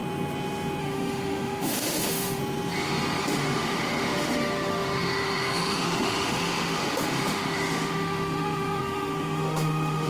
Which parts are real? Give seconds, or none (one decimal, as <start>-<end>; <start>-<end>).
0.0-0.8; 2.4-3.2